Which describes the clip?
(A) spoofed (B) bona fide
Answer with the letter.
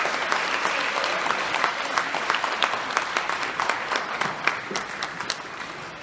B